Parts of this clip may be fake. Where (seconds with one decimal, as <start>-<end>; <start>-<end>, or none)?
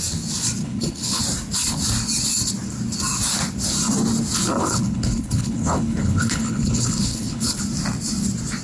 0.6-1.2; 4.6-7.6